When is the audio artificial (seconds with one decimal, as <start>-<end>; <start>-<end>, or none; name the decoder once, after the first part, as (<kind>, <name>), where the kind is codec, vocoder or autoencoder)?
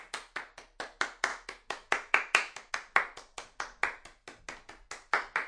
1.3-2.7 (autoencoder, DAC-VAE)